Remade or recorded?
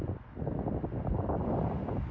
recorded